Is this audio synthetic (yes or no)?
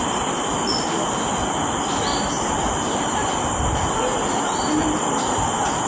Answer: no